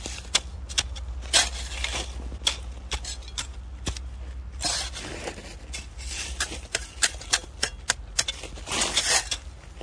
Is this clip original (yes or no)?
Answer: yes